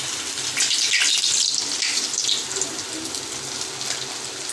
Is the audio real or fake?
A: real